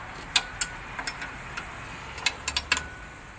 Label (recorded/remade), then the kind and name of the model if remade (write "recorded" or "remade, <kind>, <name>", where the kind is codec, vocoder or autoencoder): recorded